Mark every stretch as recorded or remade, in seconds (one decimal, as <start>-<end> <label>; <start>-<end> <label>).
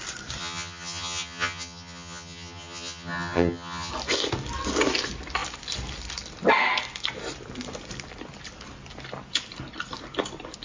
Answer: 0.0-0.4 recorded; 0.4-3.9 remade; 3.9-10.6 recorded